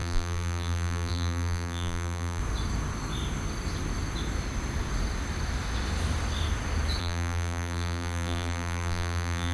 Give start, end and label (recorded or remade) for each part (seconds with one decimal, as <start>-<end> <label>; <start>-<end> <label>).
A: 0.0-2.4 remade; 2.4-7.0 recorded; 7.0-9.5 remade